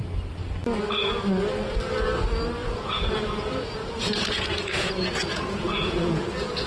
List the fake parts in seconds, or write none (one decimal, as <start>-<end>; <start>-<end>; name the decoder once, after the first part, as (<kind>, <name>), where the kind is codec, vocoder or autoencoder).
2.6-6.7 (vocoder, Vocos)